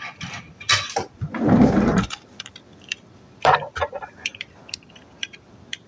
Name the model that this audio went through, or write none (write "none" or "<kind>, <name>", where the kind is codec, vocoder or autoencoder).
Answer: vocoder, BigVGAN v2